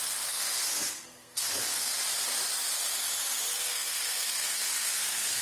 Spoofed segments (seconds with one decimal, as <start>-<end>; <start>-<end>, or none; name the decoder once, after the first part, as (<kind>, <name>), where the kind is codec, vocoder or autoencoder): 0.0-1.9 (codec, SNAC); 3.6-5.4